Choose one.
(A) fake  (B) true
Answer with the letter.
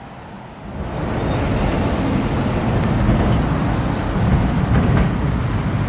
B